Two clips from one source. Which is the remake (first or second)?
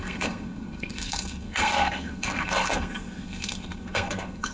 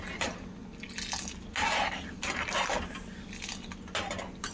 first